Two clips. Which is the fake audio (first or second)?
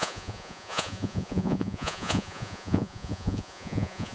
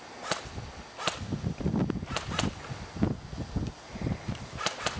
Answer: first